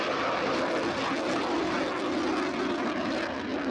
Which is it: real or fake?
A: real